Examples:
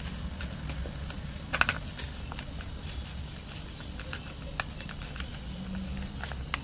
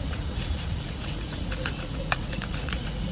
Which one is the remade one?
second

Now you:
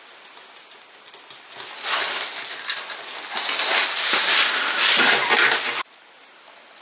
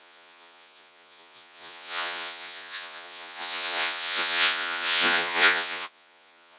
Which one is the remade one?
second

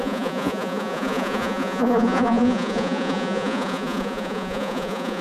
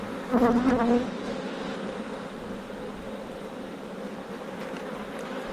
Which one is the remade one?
first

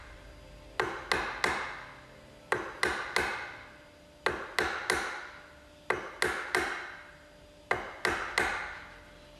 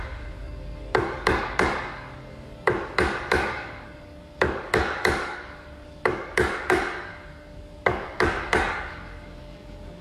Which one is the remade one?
second